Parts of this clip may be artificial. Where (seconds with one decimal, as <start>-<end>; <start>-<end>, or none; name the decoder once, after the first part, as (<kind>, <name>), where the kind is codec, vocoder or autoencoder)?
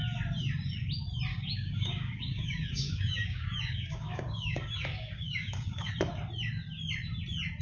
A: 1.3-5.9 (codec, DAC)